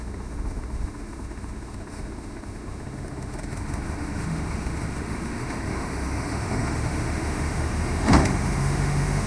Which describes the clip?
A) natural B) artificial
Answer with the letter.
B